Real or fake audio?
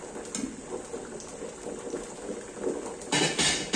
real